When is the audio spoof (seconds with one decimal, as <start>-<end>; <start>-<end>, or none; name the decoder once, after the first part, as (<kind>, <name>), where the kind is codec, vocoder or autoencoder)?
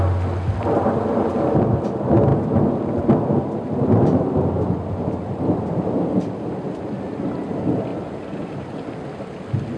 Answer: none